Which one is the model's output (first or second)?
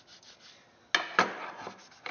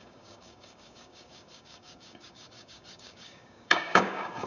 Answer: second